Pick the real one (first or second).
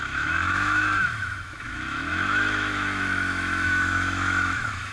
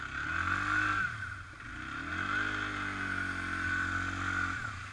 second